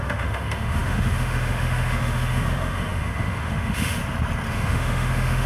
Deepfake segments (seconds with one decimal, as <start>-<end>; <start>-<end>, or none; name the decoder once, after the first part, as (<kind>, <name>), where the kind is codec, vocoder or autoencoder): 0.0-4.0 (autoencoder, DAC-VAE); 4.5-5.5

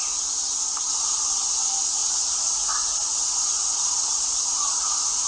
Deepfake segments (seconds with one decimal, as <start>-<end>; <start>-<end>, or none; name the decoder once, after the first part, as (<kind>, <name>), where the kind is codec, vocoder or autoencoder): 2.0-5.3 (vocoder, Vocos)

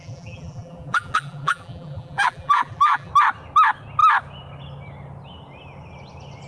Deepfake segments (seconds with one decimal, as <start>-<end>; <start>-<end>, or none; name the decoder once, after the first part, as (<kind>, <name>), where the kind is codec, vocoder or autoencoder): 0.0-3.1 (vocoder, BigVGAN v2)

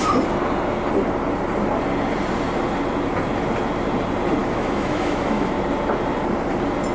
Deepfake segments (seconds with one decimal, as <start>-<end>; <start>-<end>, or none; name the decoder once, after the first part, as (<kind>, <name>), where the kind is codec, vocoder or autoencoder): 4.4-5.5 (autoencoder, DAC-VAE)

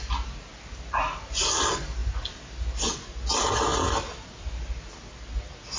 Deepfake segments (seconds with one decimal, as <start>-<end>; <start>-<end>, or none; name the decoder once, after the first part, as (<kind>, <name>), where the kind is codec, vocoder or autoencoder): none

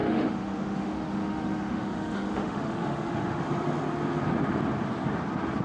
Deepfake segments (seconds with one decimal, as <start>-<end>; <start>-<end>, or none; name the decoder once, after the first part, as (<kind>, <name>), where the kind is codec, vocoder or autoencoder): 0.0-3.4 (autoencoder, DAC-VAE)

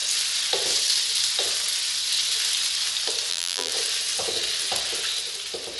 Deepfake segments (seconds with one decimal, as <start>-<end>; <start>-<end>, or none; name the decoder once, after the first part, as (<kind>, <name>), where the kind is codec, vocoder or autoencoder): 3.3-3.7 (vocoder, BigVGAN v2)

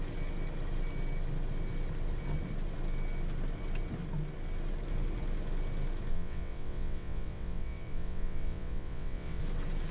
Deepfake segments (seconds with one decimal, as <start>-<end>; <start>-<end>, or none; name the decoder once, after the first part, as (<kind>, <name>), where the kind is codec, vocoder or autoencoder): 6.1-9.4 (vocoder, WaveNeXt)